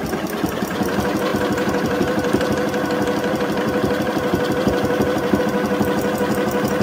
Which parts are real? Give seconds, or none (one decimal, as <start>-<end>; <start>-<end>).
0.0-1.3; 5.4-6.8